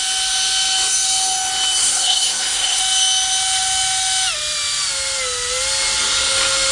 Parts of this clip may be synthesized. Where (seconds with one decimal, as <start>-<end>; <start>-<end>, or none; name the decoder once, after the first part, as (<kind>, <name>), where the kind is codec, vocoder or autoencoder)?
1.8-2.8 (codec, SNAC)